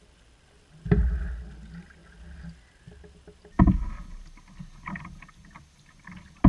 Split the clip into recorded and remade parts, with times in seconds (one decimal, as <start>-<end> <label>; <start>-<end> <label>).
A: 0.0-6.5 recorded